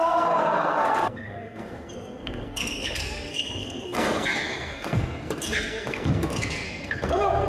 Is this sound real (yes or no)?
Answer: no